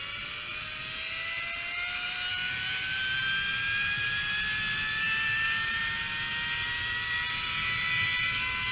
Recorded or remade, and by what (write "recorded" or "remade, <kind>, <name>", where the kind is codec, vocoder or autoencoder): recorded